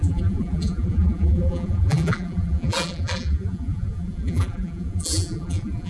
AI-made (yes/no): yes